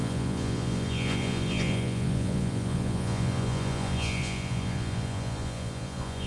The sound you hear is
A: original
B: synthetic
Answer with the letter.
B